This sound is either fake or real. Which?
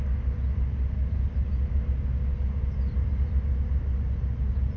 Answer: real